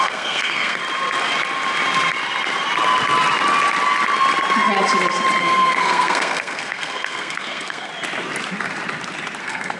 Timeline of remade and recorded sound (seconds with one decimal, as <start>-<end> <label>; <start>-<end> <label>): 0.0-0.8 remade; 0.8-5.4 recorded; 5.4-7.9 remade; 7.9-9.4 recorded; 9.4-9.8 remade